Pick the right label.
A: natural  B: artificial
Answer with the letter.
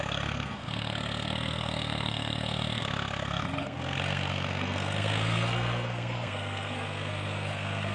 B